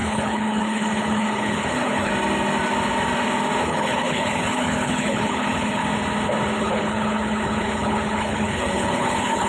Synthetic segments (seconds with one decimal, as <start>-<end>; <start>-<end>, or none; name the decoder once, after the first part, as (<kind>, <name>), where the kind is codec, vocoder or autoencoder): 0.0-2.1 (codec, HILCodec); 3.6-5.8; 6.6-9.5